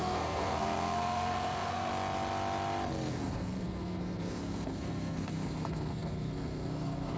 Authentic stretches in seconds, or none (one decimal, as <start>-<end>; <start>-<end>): 1.9-3.1